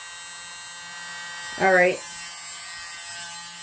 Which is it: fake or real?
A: real